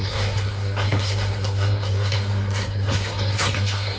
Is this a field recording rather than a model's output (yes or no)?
no